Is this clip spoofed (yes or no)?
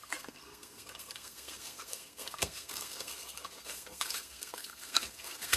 yes